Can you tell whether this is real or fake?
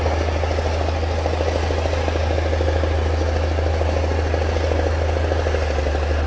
real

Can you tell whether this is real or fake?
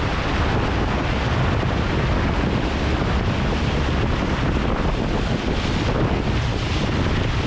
real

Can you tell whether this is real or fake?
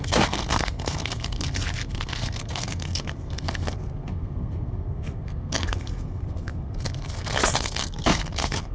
fake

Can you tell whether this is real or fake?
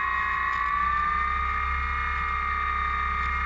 real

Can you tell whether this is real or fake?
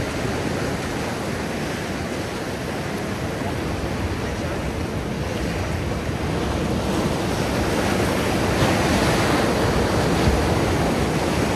real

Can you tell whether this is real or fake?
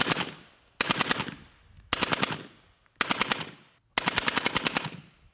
real